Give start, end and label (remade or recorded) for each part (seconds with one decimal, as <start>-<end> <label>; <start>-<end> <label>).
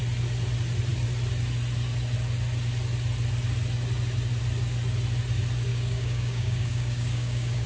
0.0-5.7 recorded; 5.7-7.7 remade